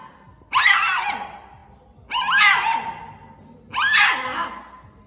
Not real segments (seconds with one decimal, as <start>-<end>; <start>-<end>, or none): 0.0-1.0